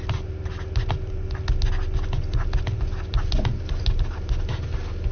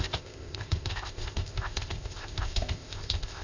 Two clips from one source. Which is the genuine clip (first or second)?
first